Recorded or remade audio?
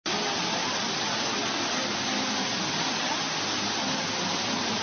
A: recorded